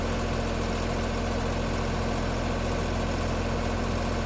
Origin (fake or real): real